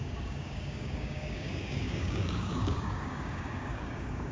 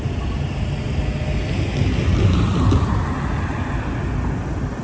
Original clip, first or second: second